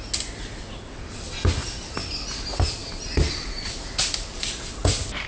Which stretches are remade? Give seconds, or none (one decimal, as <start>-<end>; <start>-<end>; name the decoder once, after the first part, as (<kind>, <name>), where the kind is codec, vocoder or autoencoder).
none

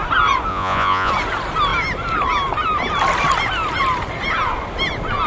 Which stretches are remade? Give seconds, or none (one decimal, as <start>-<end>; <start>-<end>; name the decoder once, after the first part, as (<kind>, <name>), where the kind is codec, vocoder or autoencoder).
0.5-1.1 (vocoder, Vocos)

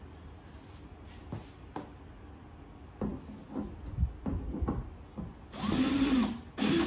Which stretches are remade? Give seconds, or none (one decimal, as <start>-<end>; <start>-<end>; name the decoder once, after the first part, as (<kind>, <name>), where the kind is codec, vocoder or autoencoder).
none

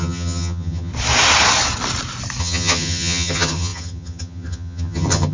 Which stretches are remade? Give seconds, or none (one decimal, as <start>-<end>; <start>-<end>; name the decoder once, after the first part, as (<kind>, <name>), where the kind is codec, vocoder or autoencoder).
0.0-0.9 (vocoder, HiFi-GAN); 2.4-5.3